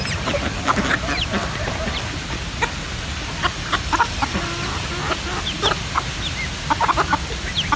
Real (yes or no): yes